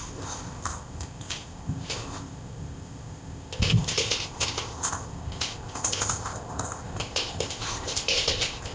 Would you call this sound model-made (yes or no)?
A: yes